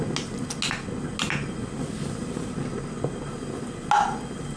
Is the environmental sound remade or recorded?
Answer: recorded